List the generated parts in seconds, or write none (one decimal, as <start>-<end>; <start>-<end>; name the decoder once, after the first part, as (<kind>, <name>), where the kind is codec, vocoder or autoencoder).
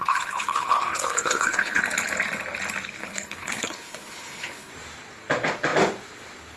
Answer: 0.0-1.8 (codec, HILCodec); 3.0-4.7